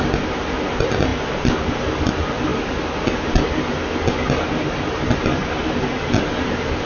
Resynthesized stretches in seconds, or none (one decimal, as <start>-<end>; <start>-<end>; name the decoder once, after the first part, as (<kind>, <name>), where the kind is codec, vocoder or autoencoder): none